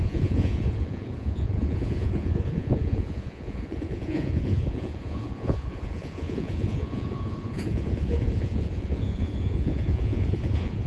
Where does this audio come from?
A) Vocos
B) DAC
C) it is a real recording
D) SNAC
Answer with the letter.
A